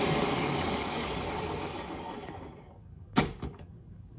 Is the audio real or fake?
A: fake